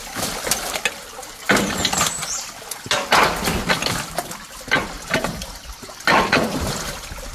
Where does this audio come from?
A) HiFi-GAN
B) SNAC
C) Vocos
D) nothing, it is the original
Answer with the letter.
D